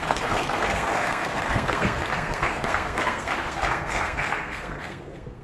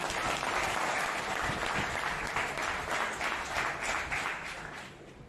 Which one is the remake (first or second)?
first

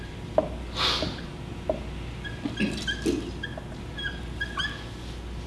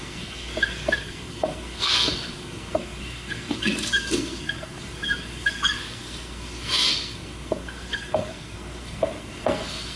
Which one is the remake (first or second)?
second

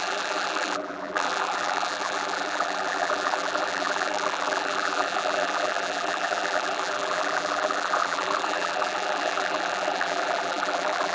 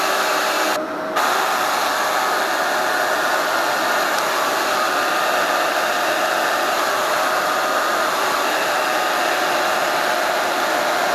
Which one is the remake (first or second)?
first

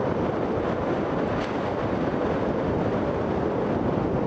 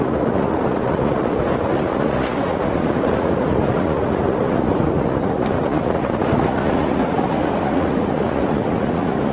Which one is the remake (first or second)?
second